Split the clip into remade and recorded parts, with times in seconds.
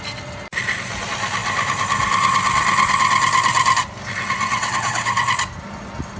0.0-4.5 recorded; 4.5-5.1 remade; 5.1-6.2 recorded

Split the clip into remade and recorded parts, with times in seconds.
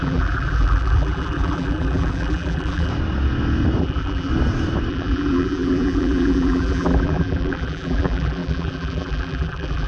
0.0-2.9 remade; 2.9-3.8 recorded; 3.8-4.3 remade; 4.3-4.9 recorded; 4.9-9.9 remade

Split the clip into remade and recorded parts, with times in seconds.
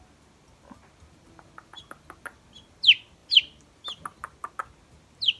0.0-5.4 recorded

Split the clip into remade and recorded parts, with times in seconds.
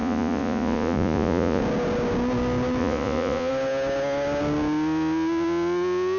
0.0-1.6 remade; 1.6-2.8 recorded; 2.8-3.5 remade; 3.5-6.2 recorded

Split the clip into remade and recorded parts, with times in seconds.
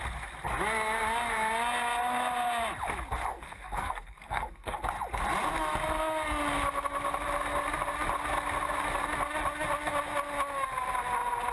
0.0-3.3 recorded; 3.3-4.8 remade; 4.8-11.5 recorded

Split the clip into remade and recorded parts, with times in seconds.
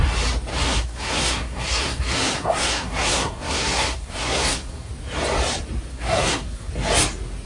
0.0-0.5 recorded; 0.5-4.9 remade; 4.9-5.9 recorded; 5.9-6.7 remade; 6.7-7.5 recorded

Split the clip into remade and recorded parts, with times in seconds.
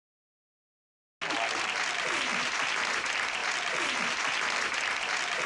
0.0-5.5 recorded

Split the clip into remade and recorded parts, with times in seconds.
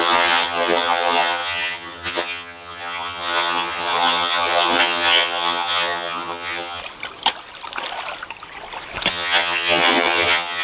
0.0-6.8 remade; 6.8-9.1 recorded; 9.1-10.6 remade